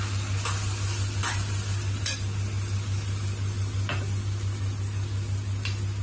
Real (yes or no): yes